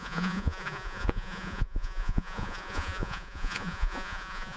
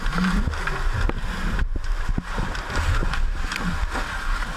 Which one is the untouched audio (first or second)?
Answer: second